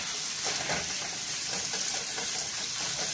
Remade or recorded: recorded